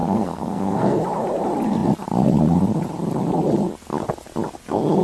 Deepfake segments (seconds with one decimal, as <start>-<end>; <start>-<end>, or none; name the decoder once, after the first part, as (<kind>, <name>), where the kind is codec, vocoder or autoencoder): 0.0-1.0 (codec, SNAC)